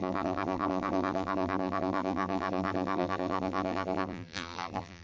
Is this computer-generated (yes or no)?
yes